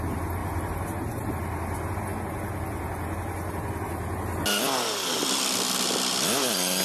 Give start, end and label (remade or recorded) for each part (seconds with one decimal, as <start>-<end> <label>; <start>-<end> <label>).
0.0-6.8 recorded